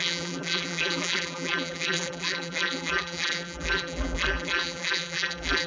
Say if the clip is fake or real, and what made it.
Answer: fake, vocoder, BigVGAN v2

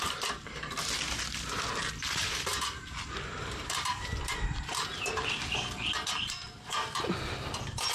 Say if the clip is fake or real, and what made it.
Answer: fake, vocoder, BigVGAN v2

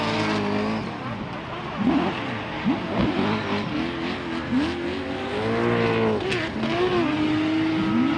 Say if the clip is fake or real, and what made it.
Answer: real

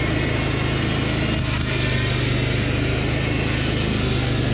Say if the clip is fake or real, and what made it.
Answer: real